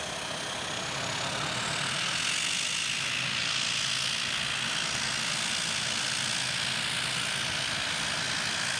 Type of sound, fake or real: real